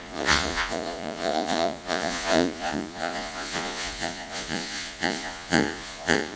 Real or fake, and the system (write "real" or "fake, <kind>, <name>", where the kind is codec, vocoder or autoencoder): fake, vocoder, Vocos